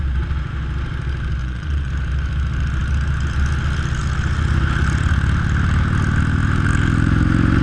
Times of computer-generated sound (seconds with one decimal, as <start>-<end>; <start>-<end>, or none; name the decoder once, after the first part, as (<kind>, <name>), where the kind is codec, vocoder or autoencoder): 1.4-1.9 (vocoder, Vocos)